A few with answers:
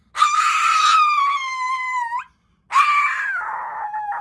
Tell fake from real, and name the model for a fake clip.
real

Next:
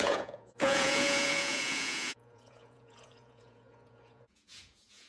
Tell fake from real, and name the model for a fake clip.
fake, vocoder, Vocos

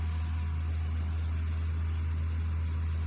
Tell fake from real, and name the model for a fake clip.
real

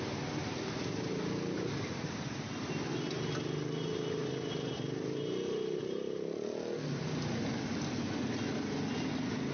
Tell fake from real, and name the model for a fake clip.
real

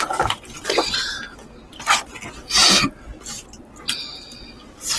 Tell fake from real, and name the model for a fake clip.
real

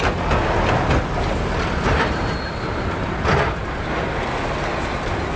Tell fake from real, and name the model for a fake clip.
real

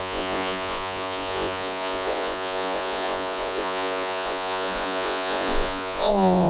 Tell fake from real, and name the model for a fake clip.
fake, vocoder, Vocos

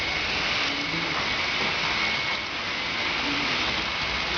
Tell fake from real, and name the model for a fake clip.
real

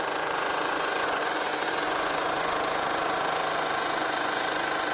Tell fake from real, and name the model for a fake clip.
fake, vocoder, Vocos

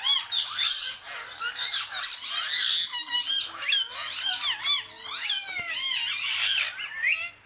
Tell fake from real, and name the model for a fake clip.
real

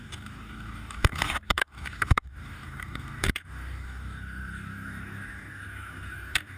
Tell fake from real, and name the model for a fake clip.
fake, codec, DAC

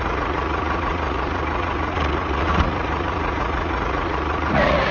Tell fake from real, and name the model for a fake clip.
fake, vocoder, Vocos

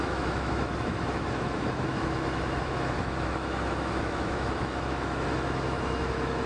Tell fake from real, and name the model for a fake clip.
fake, autoencoder, DAC-VAE